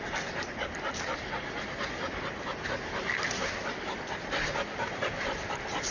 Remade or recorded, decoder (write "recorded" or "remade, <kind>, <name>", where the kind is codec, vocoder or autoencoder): recorded